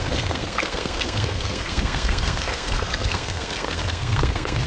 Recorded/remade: remade